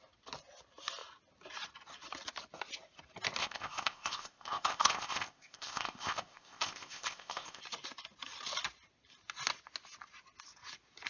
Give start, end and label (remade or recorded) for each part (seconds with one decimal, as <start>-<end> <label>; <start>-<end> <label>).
0.0-3.4 recorded; 3.4-7.6 remade; 7.6-11.1 recorded